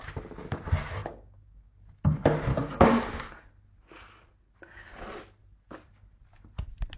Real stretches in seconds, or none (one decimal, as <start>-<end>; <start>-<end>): 0.0-1.0; 1.8-2.5; 3.5-7.0